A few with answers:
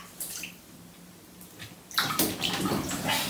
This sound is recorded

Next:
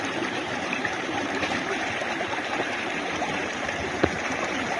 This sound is remade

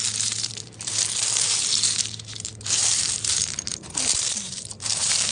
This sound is remade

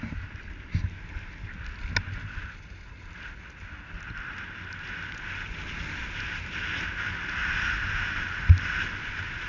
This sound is recorded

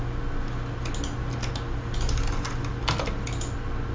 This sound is recorded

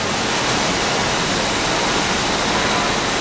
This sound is recorded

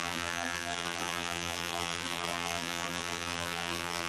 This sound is remade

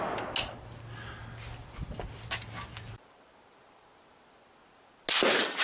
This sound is recorded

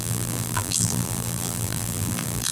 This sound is remade